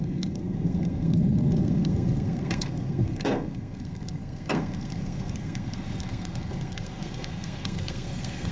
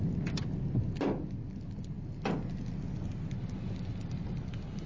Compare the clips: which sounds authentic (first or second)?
second